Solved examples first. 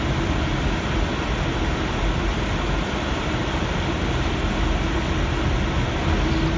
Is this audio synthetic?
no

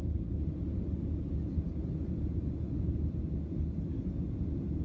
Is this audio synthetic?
no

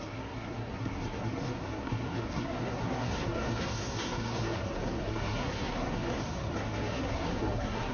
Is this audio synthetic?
yes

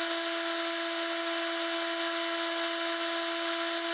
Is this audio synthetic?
no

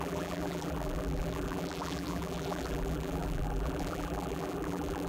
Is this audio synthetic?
yes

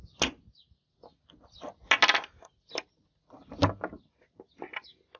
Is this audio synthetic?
no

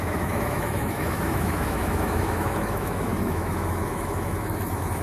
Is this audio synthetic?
yes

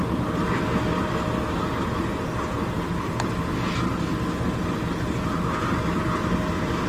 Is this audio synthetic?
no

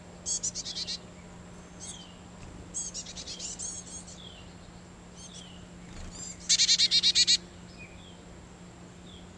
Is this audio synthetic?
no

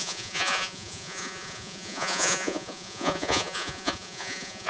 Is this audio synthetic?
yes